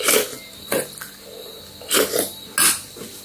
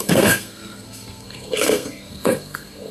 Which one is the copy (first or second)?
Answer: second